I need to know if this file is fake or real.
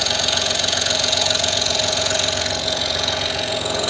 fake